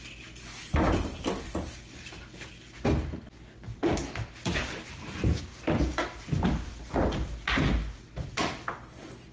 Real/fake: real